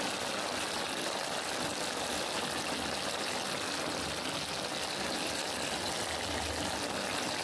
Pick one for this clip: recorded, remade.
recorded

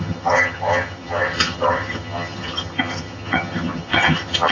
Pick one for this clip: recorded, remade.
remade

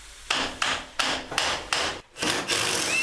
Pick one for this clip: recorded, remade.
recorded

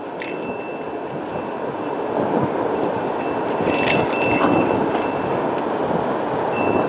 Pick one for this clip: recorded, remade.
recorded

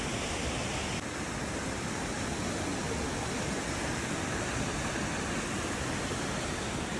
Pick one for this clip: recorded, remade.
recorded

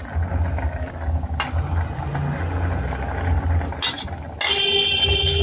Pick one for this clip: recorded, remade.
recorded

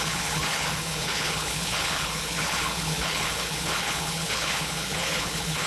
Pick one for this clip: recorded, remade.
remade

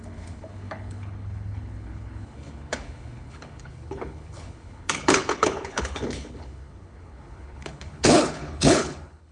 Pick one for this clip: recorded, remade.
remade